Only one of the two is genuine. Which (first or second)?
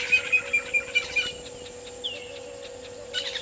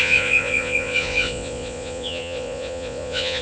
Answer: first